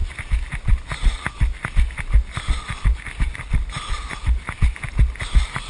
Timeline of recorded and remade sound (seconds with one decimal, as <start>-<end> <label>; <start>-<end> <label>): 0.0-5.7 recorded